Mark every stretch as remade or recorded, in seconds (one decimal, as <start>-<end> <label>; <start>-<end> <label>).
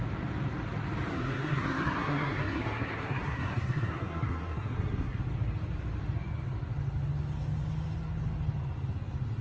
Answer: 0.0-1.1 recorded; 1.1-5.2 remade; 5.2-9.4 recorded